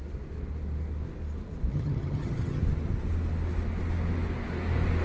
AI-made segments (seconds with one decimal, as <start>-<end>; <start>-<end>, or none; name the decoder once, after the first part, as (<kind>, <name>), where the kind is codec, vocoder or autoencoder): 1.7-2.6 (vocoder, HiFi-GAN)